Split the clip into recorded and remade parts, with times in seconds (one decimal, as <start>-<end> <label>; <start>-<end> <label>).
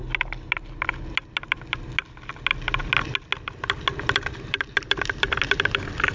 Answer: 0.0-6.1 recorded